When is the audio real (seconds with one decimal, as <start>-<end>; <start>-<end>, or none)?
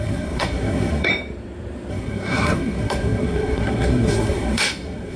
1.1-1.9